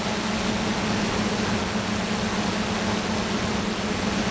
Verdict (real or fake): real